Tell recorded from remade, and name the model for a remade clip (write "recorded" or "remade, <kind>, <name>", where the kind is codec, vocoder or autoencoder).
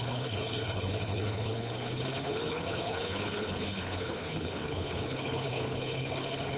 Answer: remade, codec, HILCodec